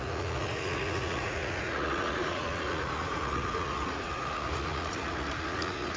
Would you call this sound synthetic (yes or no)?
yes